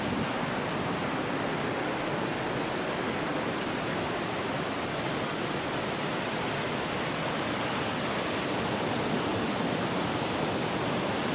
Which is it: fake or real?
real